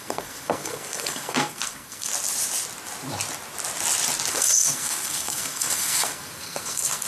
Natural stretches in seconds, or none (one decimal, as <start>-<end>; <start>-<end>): 2.1-4.3